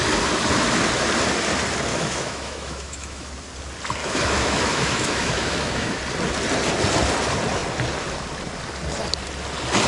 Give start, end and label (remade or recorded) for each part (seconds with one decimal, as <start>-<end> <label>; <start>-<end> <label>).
0.0-1.9 recorded; 1.9-3.3 remade; 3.3-4.0 recorded; 4.0-6.0 remade; 6.0-9.9 recorded